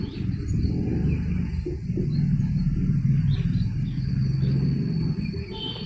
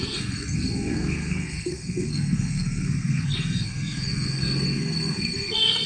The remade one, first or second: second